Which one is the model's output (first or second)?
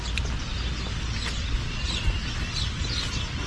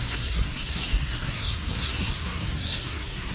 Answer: second